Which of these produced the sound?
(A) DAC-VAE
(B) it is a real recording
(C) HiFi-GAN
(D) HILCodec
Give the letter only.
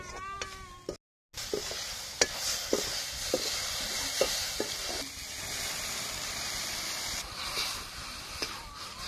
B